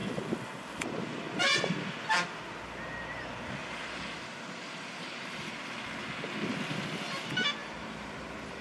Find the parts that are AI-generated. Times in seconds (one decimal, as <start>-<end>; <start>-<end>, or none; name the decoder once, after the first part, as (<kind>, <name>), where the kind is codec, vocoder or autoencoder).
3.6-5.6 (vocoder, BigVGAN v2); 7.6-8.1